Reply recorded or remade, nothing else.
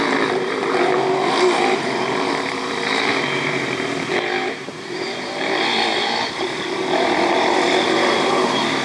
remade